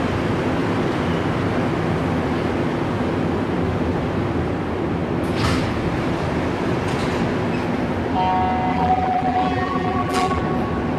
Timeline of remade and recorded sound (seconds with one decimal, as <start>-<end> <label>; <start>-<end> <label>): 0.0-8.7 recorded; 8.7-10.4 remade; 10.4-11.0 recorded

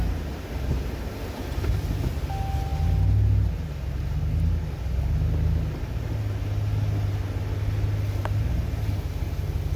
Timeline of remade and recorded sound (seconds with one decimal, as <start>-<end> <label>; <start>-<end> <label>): 0.0-9.8 recorded